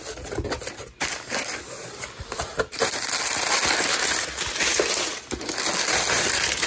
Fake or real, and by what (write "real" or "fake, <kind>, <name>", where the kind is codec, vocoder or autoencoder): real